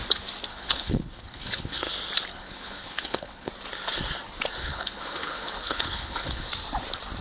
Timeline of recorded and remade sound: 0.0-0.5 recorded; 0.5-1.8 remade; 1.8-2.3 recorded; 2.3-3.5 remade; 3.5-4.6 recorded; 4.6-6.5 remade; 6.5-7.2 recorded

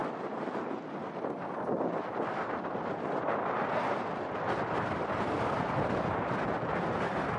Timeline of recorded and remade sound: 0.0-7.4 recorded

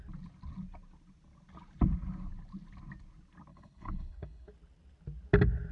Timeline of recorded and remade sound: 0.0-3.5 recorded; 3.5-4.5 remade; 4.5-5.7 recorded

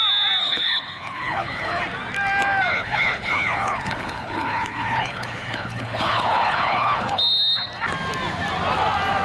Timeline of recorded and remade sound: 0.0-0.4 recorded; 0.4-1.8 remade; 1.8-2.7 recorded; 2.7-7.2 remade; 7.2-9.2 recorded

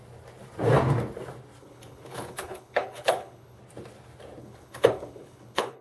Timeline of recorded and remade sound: 0.0-1.6 recorded; 1.6-3.6 remade; 3.6-4.4 recorded; 4.4-5.8 remade

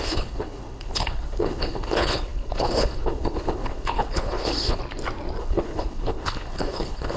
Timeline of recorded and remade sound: 0.0-4.8 remade; 4.8-5.4 recorded; 5.4-7.2 remade

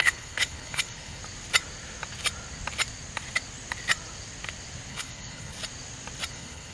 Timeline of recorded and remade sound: 0.0-1.2 remade; 1.2-4.9 recorded; 4.9-5.6 remade; 5.6-6.3 recorded; 6.3-6.7 remade

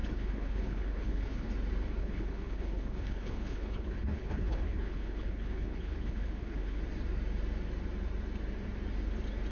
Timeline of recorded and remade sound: 0.0-1.5 remade; 1.5-2.0 recorded; 2.0-6.8 remade; 6.8-9.5 recorded